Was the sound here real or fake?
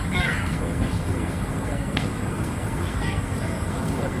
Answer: fake